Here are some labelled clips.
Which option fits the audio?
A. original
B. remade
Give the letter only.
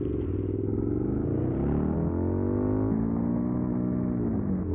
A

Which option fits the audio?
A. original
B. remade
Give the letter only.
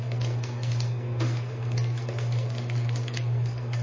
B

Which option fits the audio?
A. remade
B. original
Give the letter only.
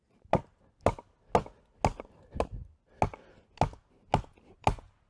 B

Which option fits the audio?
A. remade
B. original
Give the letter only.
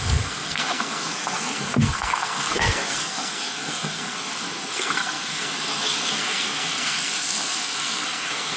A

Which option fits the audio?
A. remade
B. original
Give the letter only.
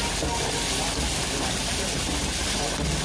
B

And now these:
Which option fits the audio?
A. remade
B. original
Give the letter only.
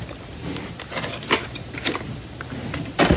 B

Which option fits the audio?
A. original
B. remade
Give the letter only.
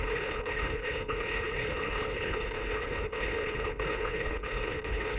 B